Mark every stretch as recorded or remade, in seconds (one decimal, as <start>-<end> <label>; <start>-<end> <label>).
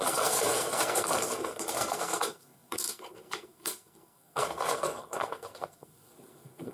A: 0.0-6.7 remade